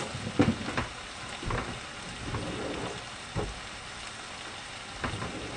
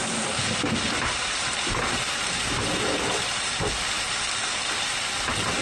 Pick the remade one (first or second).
second